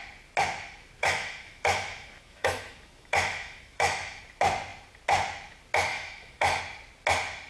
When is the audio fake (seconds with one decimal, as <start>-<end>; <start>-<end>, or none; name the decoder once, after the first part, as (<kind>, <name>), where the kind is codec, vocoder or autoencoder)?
1.0-4.2 (autoencoder, DAC-VAE); 5.9-6.6